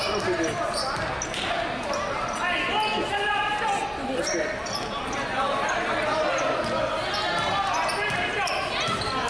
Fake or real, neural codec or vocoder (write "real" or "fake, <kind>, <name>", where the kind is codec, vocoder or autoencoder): real